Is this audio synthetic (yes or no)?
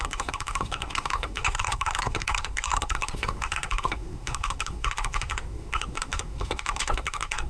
yes